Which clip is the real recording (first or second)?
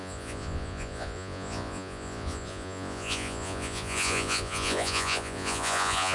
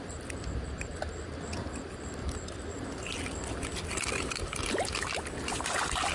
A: second